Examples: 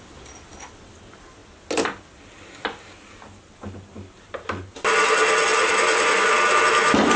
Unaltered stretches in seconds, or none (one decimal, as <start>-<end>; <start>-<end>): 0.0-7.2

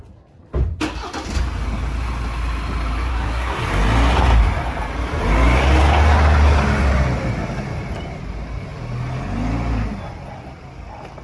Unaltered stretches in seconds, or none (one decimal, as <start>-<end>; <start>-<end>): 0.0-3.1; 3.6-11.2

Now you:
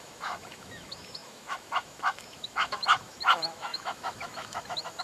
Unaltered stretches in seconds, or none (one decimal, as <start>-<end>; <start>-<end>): none

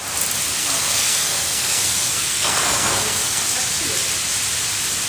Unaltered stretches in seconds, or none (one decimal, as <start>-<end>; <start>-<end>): 0.0-0.6; 3.4-5.1